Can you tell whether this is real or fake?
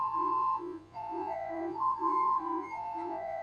fake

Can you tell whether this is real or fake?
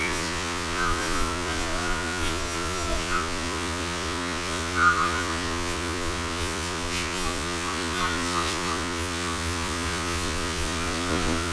fake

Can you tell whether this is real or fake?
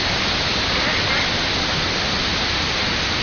real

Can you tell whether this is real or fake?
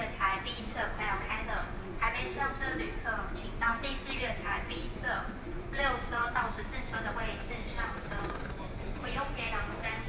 fake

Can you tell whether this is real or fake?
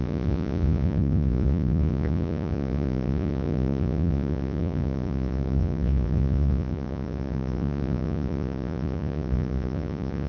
fake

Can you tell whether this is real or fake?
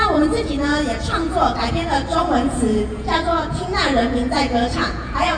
fake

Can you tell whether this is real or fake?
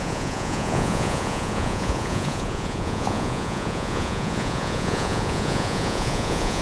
fake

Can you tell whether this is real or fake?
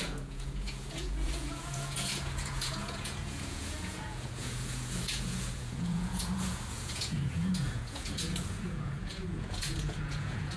fake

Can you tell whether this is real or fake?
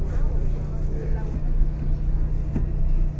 real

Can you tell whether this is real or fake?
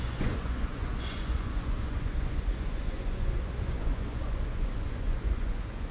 fake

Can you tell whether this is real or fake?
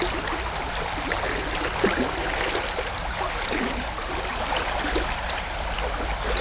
real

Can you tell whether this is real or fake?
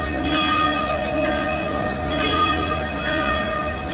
fake